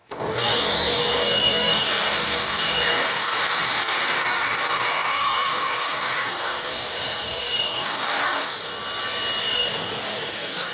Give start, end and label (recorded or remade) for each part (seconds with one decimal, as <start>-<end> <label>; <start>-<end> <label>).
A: 0.0-8.7 remade; 8.7-9.4 recorded; 9.4-10.7 remade